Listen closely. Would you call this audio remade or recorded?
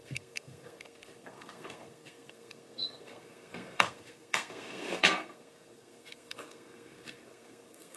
remade